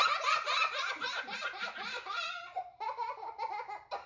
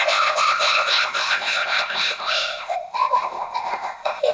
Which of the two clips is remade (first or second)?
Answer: second